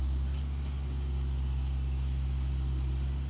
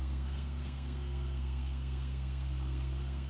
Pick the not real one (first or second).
second